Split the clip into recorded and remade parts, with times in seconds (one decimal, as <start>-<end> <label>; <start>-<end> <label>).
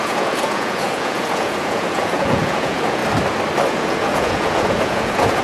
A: 0.0-3.0 remade; 3.0-3.7 recorded; 3.7-5.4 remade